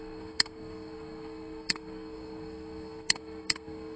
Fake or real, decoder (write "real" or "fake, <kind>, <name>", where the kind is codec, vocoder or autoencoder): fake, codec, SNAC